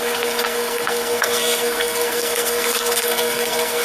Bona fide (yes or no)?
no